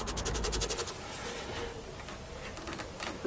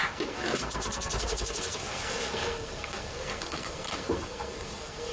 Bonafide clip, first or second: first